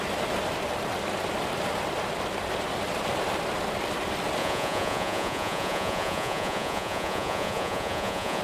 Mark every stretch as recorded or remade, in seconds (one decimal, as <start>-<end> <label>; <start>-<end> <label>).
0.0-4.4 recorded; 4.4-8.4 remade